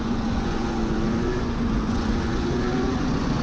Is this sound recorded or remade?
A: remade